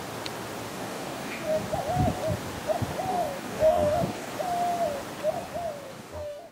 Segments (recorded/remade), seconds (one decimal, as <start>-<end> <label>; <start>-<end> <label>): 0.0-0.7 recorded; 0.7-1.6 remade; 1.6-3.1 recorded; 3.1-4.3 remade; 4.3-5.9 recorded; 5.9-6.5 remade